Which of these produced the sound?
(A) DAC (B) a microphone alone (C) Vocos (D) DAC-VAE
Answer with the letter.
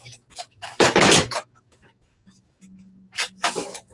A